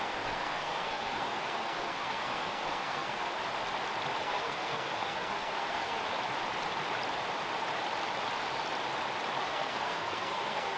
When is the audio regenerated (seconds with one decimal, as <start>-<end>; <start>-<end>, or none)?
0.0-3.4; 4.2-6.0; 9.4-10.8